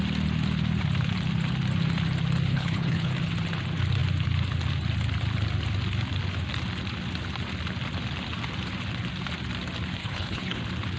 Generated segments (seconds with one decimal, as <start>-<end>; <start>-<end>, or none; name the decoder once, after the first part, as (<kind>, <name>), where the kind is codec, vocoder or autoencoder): 2.5-3.1 (codec, HILCodec); 10.0-10.6